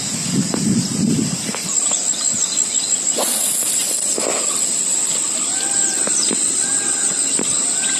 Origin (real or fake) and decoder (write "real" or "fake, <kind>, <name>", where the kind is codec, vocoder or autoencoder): real